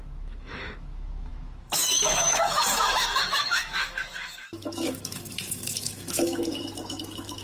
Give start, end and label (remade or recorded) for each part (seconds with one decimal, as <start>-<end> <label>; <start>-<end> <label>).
0.0-7.4 remade